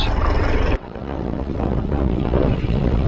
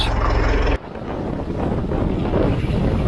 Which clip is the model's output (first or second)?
first